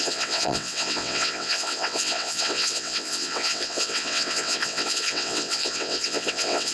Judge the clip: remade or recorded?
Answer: remade